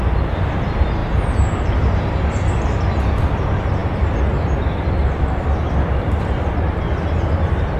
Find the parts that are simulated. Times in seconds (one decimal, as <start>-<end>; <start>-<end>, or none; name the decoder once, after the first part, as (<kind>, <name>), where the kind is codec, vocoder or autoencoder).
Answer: none